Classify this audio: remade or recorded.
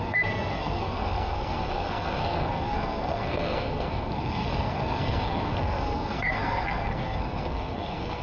remade